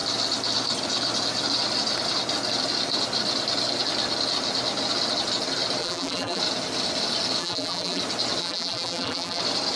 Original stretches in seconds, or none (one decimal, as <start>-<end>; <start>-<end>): 0.0-5.8; 6.4-7.4; 8.0-8.4; 9.4-9.8